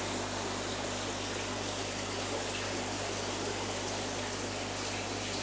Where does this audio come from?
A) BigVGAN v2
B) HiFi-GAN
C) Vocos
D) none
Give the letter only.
D